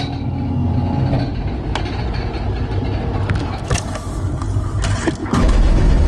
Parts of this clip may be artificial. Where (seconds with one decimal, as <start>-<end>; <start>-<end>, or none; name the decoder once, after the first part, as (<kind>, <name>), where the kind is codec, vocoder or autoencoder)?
3.4-4.3 (autoencoder, DAC-VAE); 5.2-6.1